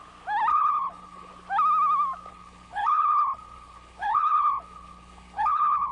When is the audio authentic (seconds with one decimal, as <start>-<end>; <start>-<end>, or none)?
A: 0.0-0.5; 1.3-2.3